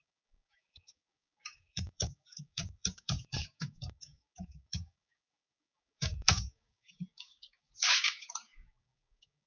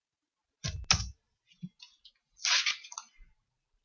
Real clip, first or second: second